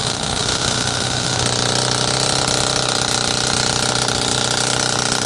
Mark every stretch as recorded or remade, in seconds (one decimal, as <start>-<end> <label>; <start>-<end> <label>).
0.0-1.4 remade; 1.4-5.3 recorded